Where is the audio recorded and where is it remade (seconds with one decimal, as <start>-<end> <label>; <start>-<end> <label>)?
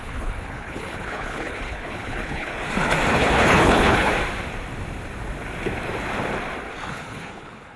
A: 0.0-2.5 remade; 2.5-3.1 recorded; 3.1-4.1 remade; 4.1-6.9 recorded; 6.9-7.8 remade